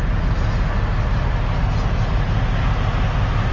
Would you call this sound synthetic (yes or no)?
no